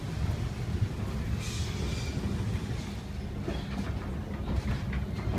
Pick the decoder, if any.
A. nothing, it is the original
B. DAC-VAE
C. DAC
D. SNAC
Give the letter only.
A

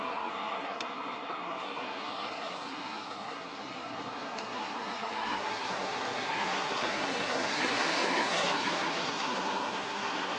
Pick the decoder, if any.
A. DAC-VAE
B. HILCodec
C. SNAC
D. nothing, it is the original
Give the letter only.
C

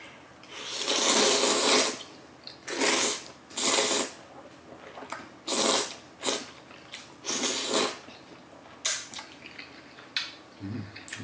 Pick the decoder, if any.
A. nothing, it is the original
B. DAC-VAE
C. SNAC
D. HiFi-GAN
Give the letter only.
A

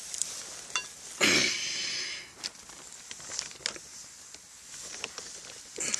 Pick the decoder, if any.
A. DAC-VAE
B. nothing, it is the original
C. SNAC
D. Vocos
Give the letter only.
B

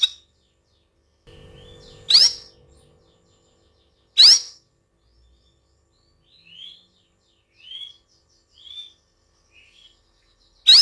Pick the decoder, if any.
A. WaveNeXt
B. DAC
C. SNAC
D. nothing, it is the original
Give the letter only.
D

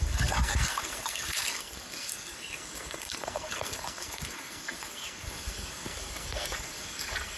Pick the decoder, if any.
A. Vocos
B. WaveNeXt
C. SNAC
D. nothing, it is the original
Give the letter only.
C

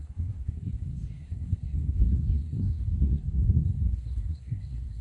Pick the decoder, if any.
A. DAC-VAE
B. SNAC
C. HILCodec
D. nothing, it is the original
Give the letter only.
B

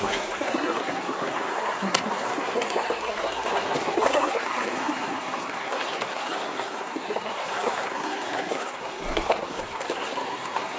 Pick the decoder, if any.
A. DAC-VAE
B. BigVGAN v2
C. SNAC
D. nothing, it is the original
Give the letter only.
C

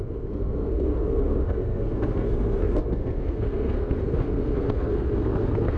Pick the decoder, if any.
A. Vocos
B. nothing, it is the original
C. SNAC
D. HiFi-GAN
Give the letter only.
C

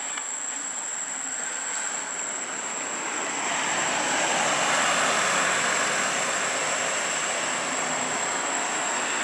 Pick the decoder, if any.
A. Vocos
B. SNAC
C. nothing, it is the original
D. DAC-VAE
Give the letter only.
C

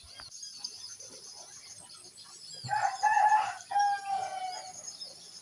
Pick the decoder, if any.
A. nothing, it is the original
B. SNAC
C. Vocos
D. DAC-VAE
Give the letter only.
A